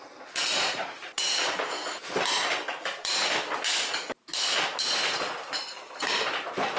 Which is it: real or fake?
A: real